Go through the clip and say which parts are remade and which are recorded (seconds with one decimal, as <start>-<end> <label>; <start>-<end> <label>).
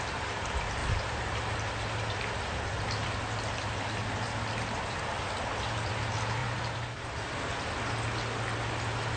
0.0-0.8 recorded; 0.8-1.5 remade; 1.5-6.4 recorded; 6.4-7.2 remade; 7.2-9.2 recorded